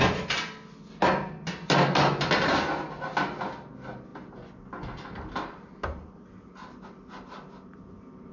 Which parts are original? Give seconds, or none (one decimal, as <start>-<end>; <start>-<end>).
0.0-8.3